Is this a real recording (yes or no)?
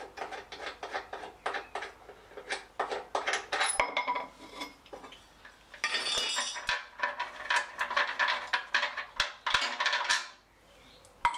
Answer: yes